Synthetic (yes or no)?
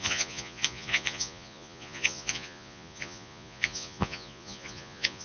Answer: yes